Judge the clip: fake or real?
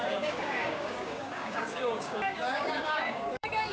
fake